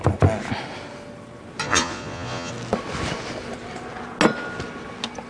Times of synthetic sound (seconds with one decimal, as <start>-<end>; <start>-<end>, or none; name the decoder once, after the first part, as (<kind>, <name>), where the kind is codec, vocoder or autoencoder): 1.6-2.5 (vocoder, Vocos)